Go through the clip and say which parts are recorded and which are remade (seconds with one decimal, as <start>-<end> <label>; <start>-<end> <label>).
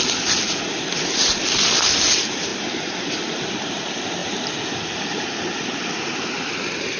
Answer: 0.0-7.0 recorded